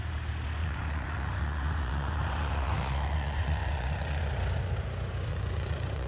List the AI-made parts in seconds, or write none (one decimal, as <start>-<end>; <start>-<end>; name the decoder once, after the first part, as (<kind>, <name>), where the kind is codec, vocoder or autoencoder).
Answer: 0.6-4.3 (vocoder, Vocos); 5.3-6.1